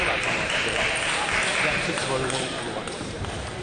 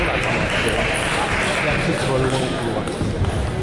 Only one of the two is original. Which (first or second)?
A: second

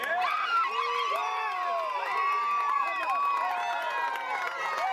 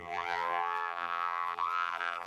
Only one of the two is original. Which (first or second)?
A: first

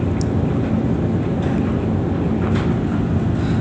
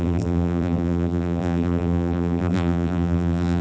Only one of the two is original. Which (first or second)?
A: first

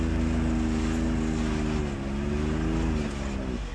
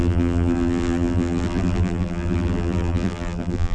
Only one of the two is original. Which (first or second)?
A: first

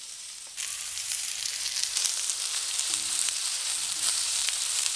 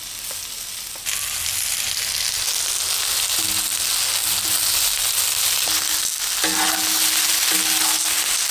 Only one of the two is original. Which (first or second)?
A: second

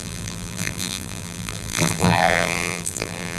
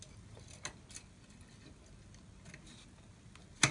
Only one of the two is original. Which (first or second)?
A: second